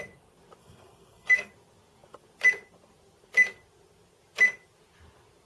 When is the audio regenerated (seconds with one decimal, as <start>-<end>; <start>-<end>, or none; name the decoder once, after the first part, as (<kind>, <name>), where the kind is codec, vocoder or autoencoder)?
0.6-1.5 (codec, SNAC)